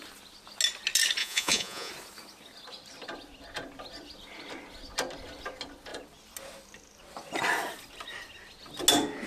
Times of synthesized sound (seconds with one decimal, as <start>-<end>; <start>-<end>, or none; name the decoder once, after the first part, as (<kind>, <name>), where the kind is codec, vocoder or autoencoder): 1.2-1.9 (vocoder, Vocos)